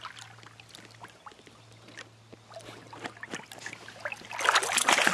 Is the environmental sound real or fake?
real